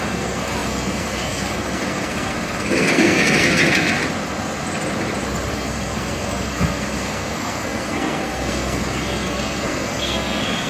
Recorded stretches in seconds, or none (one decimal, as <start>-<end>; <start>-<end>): 4.0-5.5